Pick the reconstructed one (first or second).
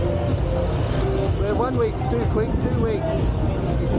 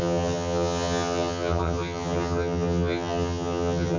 second